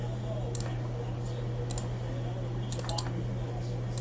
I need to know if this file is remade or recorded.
recorded